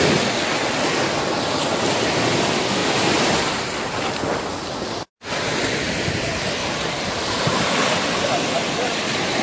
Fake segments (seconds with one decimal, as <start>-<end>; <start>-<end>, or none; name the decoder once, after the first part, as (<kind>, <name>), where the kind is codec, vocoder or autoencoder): 6.6-8.0 (vocoder, BigVGAN v2)